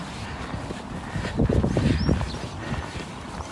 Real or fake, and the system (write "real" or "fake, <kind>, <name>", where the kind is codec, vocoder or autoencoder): real